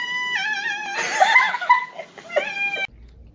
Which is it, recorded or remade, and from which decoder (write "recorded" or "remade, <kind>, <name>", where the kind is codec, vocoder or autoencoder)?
recorded